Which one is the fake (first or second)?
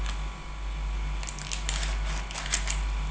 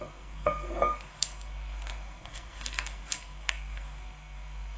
second